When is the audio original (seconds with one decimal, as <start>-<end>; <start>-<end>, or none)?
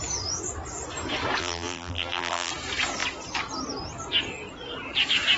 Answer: 0.0-1.4; 2.5-5.4